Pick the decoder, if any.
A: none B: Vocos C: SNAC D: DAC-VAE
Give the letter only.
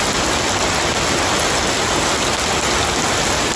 A